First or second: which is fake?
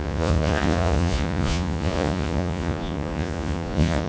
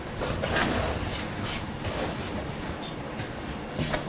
first